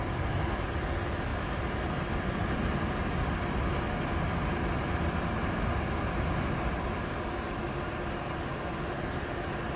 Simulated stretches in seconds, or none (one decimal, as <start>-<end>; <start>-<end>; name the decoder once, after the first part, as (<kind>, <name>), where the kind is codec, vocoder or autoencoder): 1.3-3.0 (vocoder, BigVGAN v2)